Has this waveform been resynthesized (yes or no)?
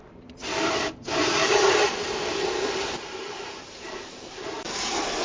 yes